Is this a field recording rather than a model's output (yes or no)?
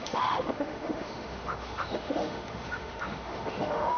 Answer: no